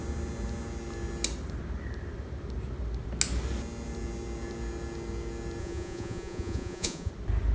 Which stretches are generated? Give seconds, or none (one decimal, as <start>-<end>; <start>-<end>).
5.6-7.1